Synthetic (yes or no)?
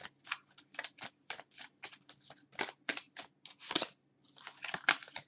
no